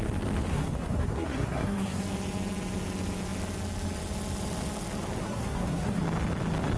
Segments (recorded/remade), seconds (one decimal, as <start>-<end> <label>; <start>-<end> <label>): 0.0-0.5 recorded; 0.5-2.0 remade; 2.0-5.2 recorded; 5.2-6.0 remade; 6.0-6.8 recorded